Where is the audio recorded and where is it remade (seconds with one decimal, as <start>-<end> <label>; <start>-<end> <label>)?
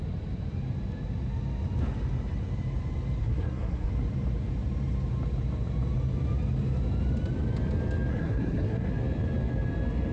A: 0.0-3.2 recorded; 3.2-3.9 remade; 3.9-8.1 recorded; 8.1-8.9 remade; 8.9-10.1 recorded